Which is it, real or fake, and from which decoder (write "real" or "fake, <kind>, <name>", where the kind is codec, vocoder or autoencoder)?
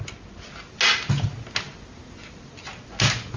real